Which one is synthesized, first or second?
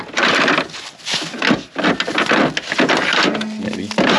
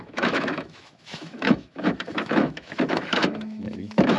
second